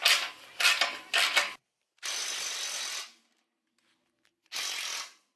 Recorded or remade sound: recorded